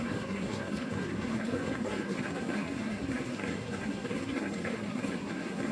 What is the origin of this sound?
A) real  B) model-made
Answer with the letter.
B